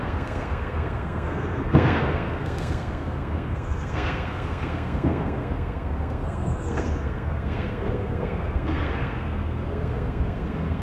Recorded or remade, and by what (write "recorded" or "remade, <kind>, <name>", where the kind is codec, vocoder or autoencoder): remade, codec, SNAC